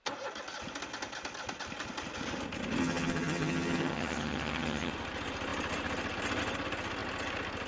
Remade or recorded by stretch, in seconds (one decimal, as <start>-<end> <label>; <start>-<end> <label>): 0.0-2.8 recorded; 2.8-4.9 remade; 4.9-7.7 recorded